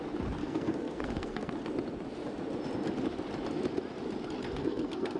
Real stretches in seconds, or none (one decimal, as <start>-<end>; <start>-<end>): 0.0-0.4; 1.5-4.6